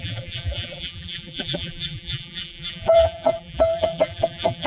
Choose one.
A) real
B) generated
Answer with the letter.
B